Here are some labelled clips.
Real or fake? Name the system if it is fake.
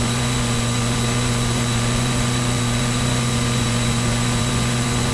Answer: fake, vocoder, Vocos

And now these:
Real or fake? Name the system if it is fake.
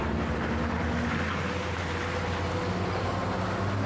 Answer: real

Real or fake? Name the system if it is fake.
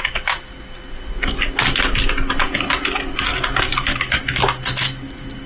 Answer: real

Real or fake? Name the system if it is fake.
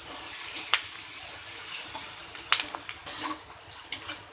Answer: real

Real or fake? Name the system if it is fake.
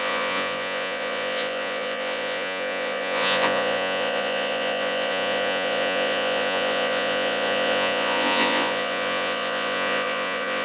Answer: fake, vocoder, Vocos